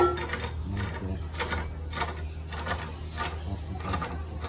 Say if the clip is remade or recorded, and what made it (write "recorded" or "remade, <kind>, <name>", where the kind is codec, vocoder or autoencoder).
recorded